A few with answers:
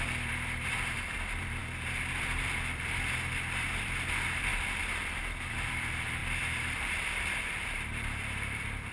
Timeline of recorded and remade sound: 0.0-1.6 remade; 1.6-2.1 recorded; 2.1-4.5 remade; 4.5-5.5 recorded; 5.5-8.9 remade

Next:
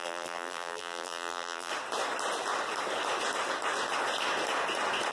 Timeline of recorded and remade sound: 0.0-1.7 remade; 1.7-5.1 recorded